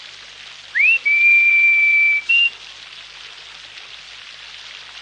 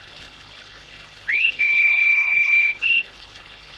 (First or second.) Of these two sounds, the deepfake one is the second